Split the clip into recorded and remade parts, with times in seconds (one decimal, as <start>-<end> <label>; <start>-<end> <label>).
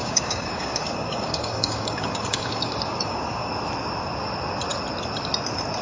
0.0-3.5 remade; 3.5-5.8 recorded